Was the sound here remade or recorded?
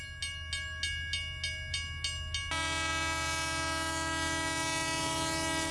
recorded